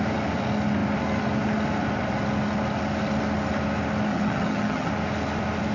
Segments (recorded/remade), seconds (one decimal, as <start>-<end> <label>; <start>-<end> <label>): 0.0-4.1 recorded; 4.1-4.9 remade; 4.9-5.7 recorded